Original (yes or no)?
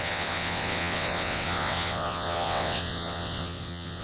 no